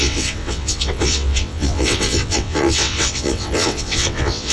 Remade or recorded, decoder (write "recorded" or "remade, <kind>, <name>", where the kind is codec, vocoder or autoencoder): remade, vocoder, WaveNeXt